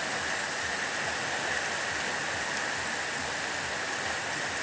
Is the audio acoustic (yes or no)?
yes